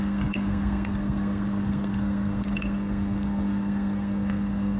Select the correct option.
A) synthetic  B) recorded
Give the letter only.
A